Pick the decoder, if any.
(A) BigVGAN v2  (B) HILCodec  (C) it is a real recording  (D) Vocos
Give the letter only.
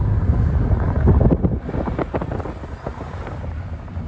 C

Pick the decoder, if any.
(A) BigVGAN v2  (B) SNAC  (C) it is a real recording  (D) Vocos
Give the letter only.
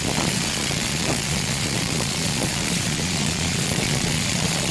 D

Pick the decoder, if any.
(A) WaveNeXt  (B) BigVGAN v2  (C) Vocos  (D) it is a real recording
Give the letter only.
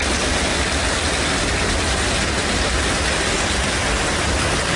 D